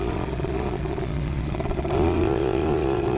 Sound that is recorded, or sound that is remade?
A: remade